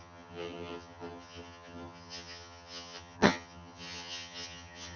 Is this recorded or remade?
remade